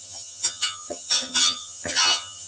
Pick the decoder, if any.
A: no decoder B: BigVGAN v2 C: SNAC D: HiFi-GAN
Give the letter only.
D